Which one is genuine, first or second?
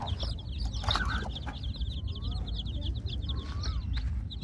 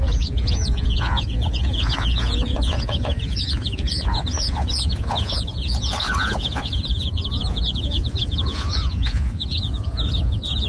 first